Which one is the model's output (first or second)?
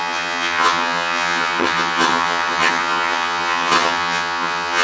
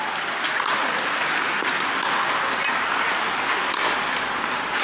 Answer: first